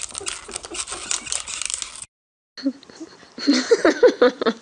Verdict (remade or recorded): recorded